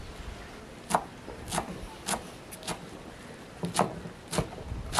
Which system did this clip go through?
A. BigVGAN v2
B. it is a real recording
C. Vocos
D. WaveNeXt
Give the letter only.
B